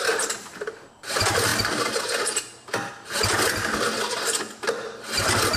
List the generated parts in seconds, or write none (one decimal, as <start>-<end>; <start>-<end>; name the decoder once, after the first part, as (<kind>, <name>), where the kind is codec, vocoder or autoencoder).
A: none